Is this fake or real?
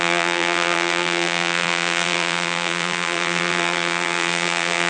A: fake